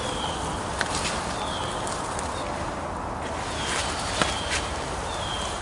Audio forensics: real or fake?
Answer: real